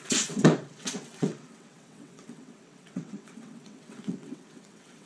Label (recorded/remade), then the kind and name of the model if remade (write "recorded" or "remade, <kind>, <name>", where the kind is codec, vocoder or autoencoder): remade, vocoder, WaveNeXt